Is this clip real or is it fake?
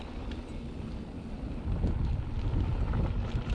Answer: real